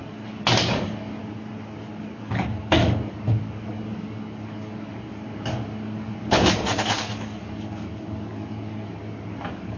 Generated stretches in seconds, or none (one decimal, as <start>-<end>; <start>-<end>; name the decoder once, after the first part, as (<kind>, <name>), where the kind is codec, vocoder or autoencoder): 0.0-1.2 (codec, DAC); 2.0-9.8